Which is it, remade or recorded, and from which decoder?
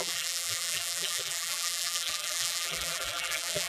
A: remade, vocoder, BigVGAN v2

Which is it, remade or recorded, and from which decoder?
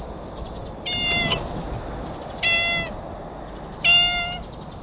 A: recorded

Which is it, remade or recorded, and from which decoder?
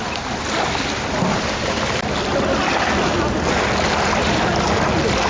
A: recorded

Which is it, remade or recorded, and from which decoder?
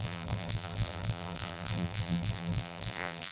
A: remade, vocoder, BigVGAN v2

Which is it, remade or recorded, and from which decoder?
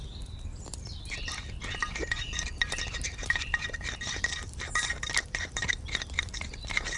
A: remade, vocoder, BigVGAN v2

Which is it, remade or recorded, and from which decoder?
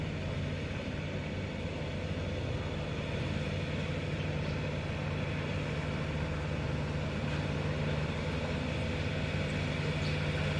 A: recorded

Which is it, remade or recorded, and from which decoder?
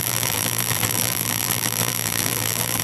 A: remade, vocoder, BigVGAN v2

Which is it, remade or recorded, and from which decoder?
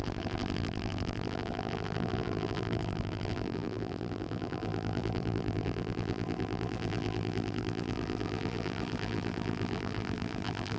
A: remade, vocoder, BigVGAN v2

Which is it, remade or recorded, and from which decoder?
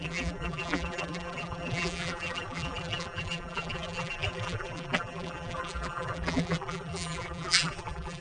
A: remade, vocoder, BigVGAN v2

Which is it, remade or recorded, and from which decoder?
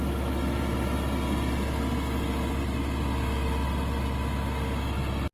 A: recorded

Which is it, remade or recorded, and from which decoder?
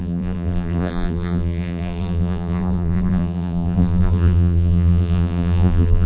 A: remade, vocoder, BigVGAN v2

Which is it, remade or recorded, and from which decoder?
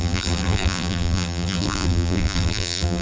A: remade, vocoder, BigVGAN v2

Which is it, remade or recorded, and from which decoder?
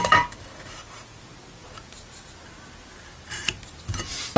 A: recorded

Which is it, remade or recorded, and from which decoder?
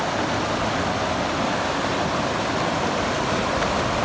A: recorded